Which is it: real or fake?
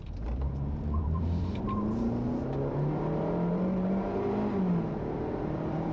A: fake